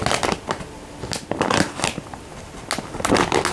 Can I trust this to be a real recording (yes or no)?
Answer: yes